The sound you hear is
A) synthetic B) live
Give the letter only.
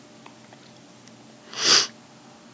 B